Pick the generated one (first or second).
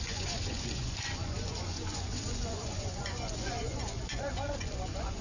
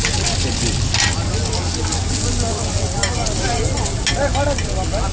first